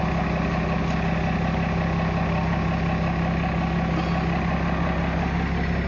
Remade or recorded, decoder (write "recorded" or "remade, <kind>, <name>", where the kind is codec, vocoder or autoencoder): recorded